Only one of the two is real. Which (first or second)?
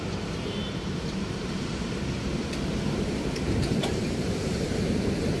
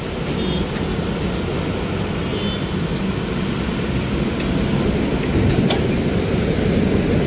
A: second